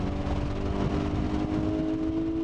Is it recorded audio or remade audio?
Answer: recorded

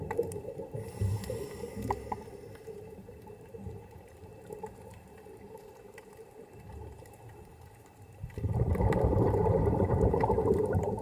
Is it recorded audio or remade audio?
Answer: remade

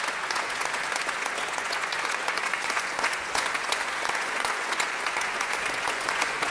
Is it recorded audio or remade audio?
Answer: remade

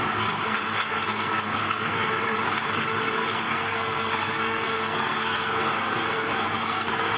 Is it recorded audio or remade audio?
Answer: remade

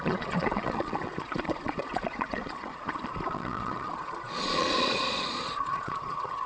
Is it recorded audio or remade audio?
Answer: remade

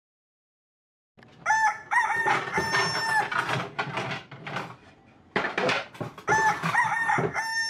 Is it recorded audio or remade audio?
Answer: recorded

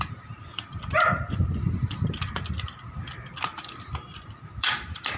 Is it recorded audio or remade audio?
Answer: remade